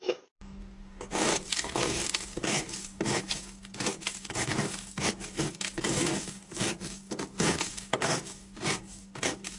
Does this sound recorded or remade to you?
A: remade